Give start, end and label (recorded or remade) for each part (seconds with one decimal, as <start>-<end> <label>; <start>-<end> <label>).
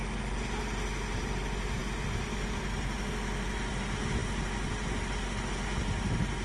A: 0.0-6.4 recorded